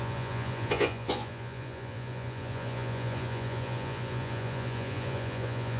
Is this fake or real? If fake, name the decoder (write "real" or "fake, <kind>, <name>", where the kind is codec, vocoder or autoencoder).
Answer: fake, vocoder, Vocos